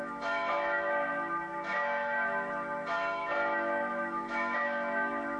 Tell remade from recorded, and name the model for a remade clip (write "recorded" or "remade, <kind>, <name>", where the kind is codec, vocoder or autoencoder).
remade, autoencoder, DAC-VAE